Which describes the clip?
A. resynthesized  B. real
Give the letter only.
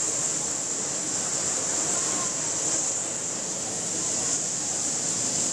B